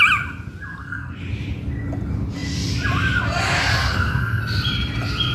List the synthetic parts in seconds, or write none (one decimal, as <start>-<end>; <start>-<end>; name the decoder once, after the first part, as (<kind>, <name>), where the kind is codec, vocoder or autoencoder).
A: 0.7-1.2 (codec, SNAC); 3.8-4.4